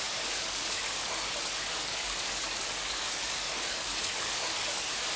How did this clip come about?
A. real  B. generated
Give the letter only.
B